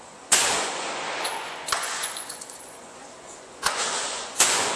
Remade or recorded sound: remade